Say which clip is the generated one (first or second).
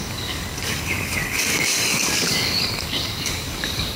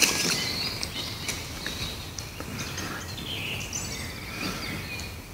first